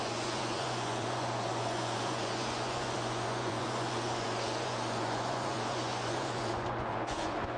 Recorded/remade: remade